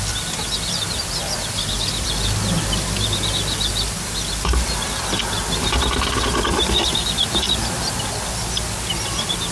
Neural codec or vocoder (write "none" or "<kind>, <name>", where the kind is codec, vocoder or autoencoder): none